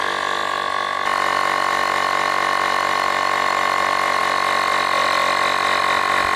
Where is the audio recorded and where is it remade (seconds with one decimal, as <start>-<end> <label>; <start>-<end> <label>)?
0.0-6.4 recorded